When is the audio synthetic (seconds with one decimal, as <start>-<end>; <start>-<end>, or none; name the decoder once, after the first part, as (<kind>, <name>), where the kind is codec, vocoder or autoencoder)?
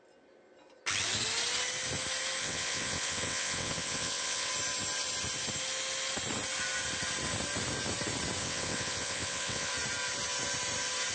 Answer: 2.4-4.5 (vocoder, WaveNeXt); 8.4-9.7